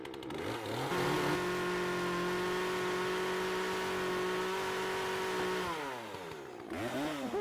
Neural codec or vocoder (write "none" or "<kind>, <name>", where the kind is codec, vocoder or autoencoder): none